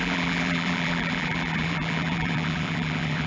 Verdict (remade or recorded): remade